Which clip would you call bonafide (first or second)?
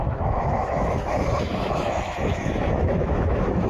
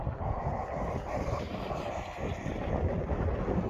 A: second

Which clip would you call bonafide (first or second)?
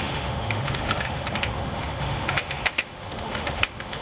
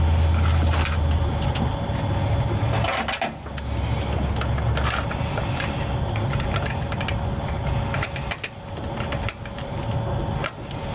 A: second